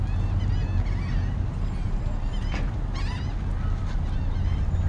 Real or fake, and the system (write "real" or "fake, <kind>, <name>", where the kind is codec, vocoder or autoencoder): real